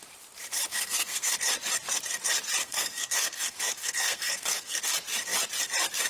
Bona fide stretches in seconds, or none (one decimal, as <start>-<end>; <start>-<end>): 0.0-0.7; 1.3-2.6; 4.8-6.1